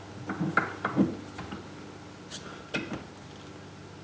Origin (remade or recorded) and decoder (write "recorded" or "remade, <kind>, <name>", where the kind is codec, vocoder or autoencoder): recorded